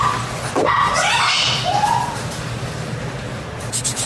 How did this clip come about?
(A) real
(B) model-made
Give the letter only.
A